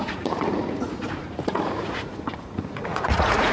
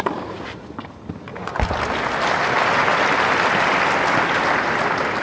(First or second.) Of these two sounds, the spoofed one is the first